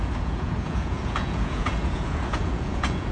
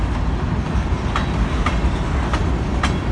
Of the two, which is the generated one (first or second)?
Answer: first